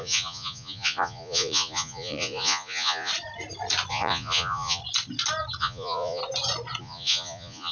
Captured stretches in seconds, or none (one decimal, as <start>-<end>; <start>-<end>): 3.1-3.9; 4.8-5.6; 6.2-6.8